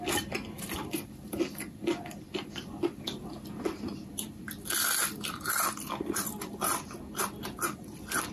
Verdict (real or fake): fake